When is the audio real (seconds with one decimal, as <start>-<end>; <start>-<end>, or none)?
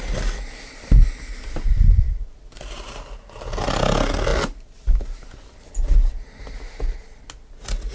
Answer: 0.0-7.9